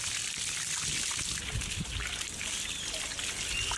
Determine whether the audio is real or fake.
real